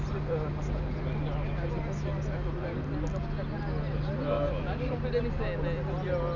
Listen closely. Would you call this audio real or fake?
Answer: real